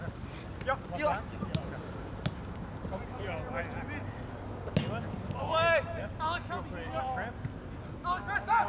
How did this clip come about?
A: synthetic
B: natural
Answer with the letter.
B